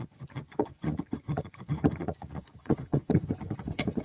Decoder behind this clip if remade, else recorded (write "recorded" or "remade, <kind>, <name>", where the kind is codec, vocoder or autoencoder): remade, vocoder, Vocos